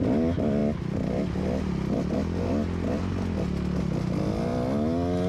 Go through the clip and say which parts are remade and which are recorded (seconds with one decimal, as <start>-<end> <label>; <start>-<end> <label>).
0.0-5.3 recorded